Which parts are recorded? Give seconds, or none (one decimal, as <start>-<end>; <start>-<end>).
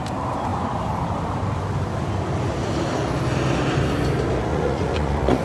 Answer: 0.0-4.5